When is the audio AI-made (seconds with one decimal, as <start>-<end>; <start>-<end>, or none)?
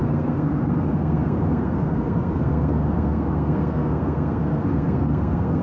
0.0-5.6